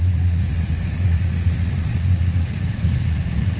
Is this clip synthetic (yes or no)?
yes